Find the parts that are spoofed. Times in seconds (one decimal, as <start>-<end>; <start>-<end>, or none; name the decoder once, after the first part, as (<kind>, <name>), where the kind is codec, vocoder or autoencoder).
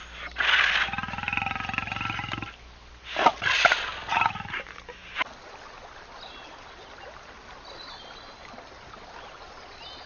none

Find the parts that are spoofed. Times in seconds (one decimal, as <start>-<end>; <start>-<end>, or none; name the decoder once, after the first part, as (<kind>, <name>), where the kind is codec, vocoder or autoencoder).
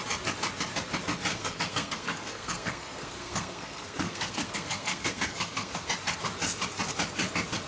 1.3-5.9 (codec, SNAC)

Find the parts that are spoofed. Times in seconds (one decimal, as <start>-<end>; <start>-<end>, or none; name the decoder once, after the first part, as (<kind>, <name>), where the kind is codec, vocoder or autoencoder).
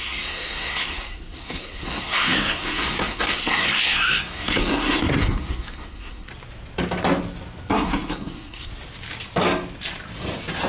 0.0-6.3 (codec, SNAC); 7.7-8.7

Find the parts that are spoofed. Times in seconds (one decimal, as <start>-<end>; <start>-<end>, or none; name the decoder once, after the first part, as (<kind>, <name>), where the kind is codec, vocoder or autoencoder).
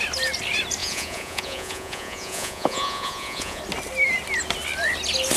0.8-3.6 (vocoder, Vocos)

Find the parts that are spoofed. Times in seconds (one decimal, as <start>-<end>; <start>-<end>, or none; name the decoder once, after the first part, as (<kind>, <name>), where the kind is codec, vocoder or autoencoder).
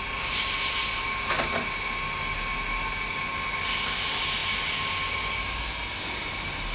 none